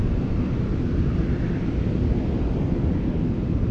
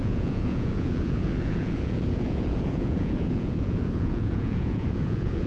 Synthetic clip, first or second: second